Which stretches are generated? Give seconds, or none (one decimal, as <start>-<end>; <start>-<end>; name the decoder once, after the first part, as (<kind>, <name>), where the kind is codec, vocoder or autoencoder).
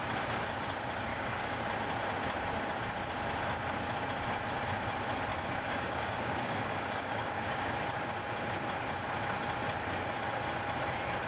1.1-1.7 (codec, DAC); 5.3-7.7